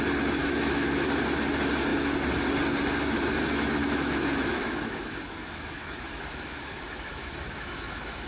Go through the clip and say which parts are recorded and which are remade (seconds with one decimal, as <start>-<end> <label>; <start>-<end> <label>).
0.0-0.4 recorded; 0.4-1.2 remade; 1.2-3.8 recorded; 3.8-8.3 remade